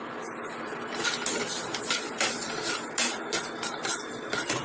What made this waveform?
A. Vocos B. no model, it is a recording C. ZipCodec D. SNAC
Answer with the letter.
B